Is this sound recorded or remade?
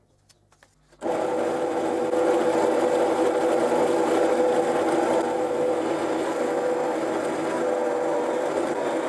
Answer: recorded